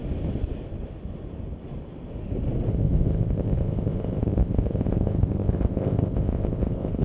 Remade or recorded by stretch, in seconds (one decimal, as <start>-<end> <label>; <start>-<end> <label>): 0.0-2.7 recorded; 2.7-7.0 remade